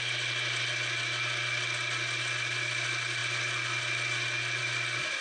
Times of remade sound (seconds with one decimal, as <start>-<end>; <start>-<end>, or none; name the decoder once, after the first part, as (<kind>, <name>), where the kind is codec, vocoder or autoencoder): none